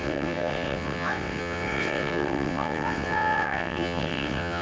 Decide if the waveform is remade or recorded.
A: remade